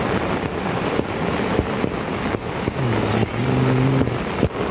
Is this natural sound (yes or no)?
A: yes